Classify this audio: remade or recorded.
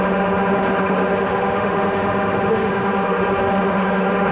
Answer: remade